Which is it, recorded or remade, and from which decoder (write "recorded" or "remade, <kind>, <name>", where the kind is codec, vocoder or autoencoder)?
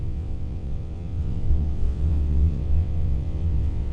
remade, vocoder, WaveNeXt